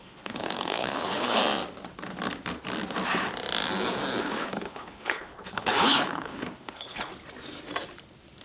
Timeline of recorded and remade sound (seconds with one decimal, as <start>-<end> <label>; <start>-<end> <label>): 0.0-1.4 remade; 1.4-4.2 recorded; 4.2-7.1 remade; 7.1-8.4 recorded